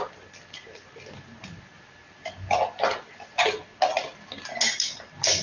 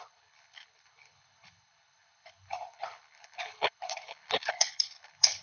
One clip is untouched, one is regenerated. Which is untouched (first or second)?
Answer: first